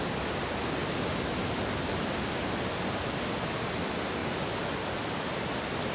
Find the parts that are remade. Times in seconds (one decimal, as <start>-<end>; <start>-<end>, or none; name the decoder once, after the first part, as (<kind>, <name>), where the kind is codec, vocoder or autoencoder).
none